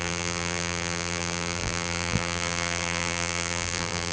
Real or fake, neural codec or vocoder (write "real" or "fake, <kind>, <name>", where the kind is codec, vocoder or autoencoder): fake, vocoder, BigVGAN v2